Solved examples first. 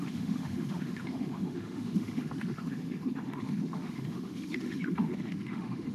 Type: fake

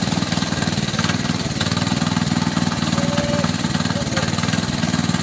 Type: real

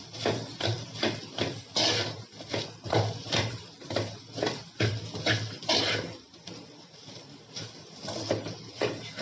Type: real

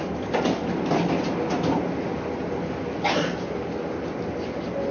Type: real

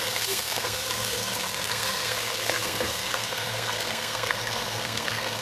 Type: fake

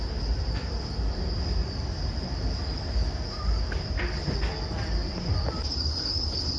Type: real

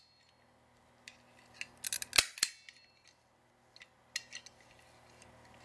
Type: real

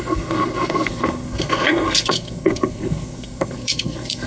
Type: fake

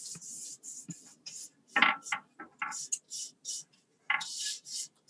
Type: real